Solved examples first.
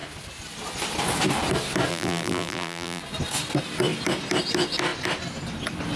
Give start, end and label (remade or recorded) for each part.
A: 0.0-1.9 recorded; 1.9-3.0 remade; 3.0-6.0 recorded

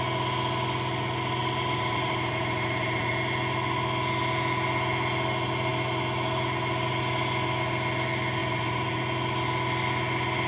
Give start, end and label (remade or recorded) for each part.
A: 0.0-1.4 recorded; 1.4-3.1 remade; 3.1-8.4 recorded; 8.4-9.0 remade; 9.0-10.5 recorded

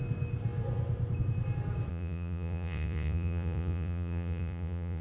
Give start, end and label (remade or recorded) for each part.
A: 0.0-1.9 recorded; 1.9-5.0 remade

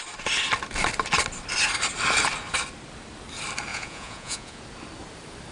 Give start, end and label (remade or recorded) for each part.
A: 0.0-3.7 recorded; 3.7-4.6 remade; 4.6-5.5 recorded

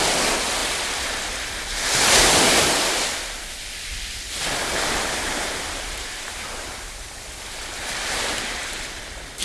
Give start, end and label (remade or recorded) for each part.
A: 0.0-5.7 recorded; 5.7-9.0 remade; 9.0-9.4 recorded